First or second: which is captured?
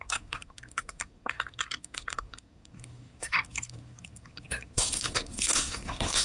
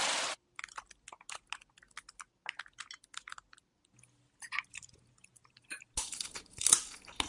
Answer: second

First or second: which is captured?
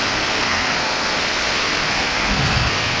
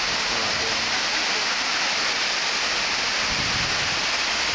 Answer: second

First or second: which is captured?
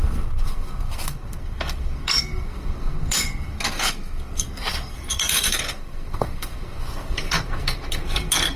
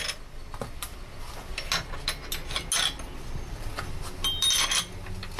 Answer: second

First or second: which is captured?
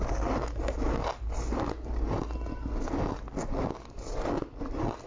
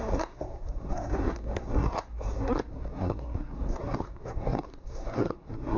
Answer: first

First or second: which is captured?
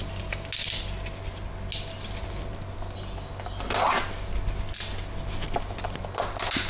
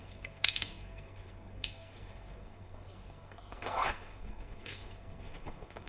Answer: first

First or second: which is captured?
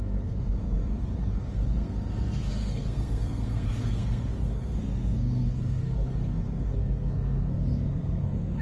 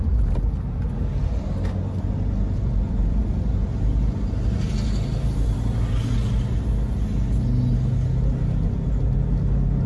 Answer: second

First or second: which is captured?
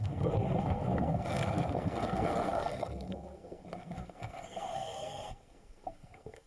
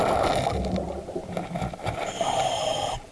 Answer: second